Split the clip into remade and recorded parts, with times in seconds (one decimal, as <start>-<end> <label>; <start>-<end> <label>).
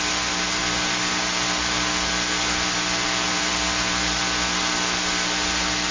0.0-5.9 recorded